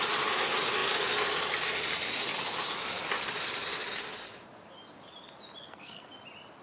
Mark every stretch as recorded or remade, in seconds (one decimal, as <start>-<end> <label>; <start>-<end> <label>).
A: 0.0-5.6 recorded; 5.6-6.1 remade; 6.1-6.6 recorded